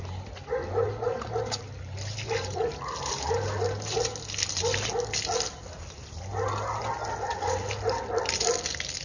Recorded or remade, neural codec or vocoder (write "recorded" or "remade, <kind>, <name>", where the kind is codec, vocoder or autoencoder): recorded